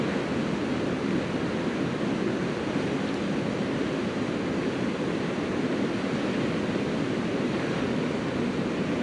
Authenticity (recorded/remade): recorded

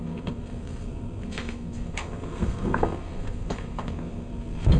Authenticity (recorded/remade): remade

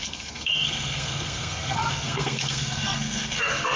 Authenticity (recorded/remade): remade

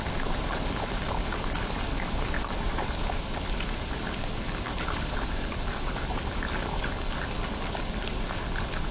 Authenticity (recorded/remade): recorded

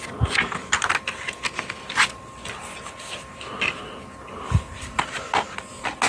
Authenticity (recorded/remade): recorded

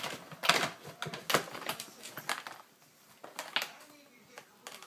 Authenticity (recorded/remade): recorded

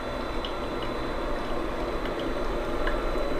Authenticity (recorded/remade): recorded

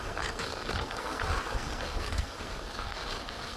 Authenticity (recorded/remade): remade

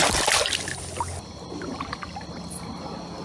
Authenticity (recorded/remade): recorded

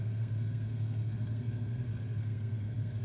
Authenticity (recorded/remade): remade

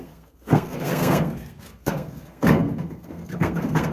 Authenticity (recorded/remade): remade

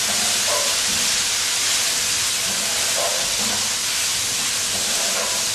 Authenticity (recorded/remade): recorded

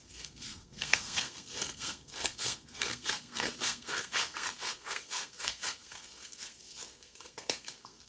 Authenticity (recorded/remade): remade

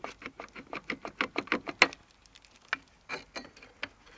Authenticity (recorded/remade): recorded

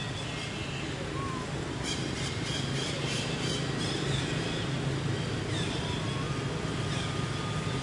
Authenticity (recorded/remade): recorded